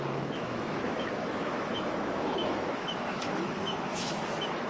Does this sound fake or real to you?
fake